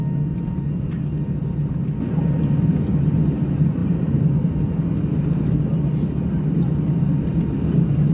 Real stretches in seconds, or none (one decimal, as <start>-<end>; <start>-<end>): 0.0-3.8; 4.5-8.1